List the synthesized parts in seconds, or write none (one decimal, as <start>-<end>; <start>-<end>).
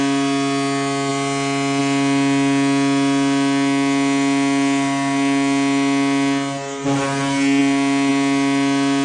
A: none